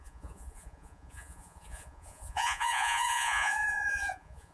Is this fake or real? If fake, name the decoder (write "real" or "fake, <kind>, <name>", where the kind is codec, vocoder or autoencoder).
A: fake, vocoder, Vocos